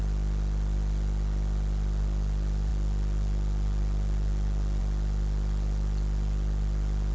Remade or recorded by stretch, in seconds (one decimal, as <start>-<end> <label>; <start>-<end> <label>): 0.0-7.1 recorded